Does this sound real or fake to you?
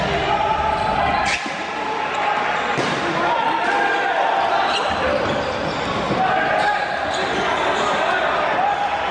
real